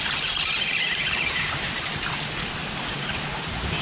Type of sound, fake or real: fake